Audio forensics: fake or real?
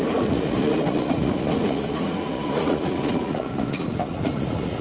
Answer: fake